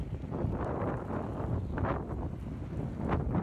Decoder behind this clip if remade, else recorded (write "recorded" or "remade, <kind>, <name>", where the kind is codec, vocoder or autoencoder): recorded